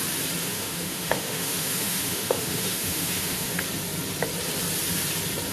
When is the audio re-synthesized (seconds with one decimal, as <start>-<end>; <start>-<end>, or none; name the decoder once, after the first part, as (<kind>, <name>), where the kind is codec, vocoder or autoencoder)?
0.4-3.6 (autoencoder, DAC-VAE)

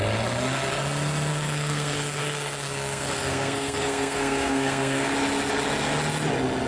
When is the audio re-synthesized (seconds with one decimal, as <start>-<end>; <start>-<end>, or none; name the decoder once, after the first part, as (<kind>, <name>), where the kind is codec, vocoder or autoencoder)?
1.3-5.1 (codec, SNAC)

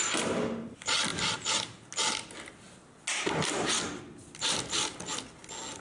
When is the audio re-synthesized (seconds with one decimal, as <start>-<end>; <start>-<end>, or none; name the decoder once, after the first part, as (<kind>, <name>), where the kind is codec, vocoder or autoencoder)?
none

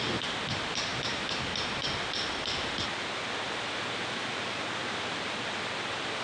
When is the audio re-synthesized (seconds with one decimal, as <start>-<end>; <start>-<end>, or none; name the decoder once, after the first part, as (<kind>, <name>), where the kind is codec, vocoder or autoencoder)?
none

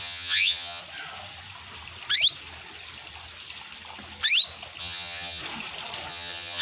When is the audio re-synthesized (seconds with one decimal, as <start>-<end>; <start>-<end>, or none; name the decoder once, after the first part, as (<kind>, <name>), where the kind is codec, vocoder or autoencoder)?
0.0-0.8 (vocoder, HiFi-GAN); 4.8-5.4; 6.1-6.6